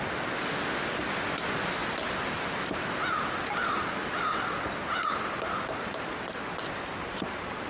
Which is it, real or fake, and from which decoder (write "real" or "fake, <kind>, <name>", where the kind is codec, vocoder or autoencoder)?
real